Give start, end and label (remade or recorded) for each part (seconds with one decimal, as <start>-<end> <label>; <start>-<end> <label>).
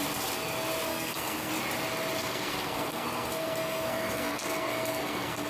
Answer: 0.0-0.9 recorded; 0.9-1.5 remade; 1.5-2.2 recorded; 2.2-5.5 remade